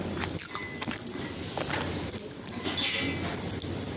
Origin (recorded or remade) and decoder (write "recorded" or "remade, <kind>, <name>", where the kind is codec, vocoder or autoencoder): recorded